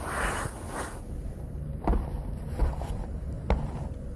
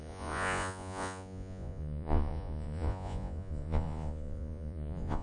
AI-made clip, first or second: second